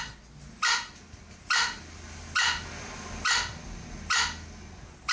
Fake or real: real